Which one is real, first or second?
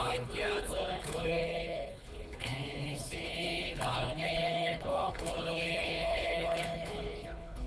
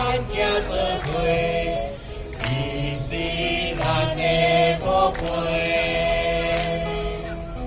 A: second